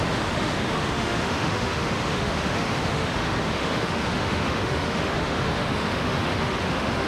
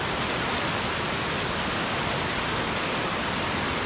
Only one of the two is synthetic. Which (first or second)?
first